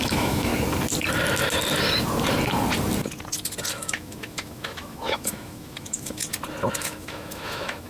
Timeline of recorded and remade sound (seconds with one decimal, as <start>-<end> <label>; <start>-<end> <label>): 0.0-0.5 remade; 0.5-3.7 recorded; 3.7-6.2 remade; 6.2-6.8 recorded; 6.8-7.9 remade